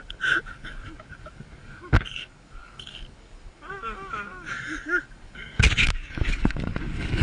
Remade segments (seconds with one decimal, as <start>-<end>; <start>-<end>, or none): 0.0-7.2